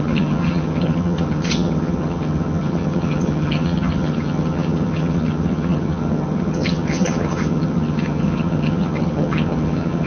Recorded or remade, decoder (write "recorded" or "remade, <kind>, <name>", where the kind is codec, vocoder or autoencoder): remade, vocoder, HiFi-GAN